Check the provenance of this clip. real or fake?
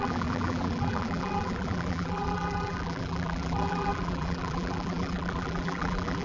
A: fake